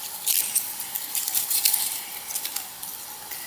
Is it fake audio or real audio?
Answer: real